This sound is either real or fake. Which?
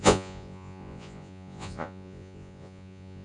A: fake